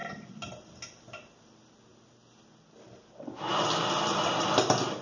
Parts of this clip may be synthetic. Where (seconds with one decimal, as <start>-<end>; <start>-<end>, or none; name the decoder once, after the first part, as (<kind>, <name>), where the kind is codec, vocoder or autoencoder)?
none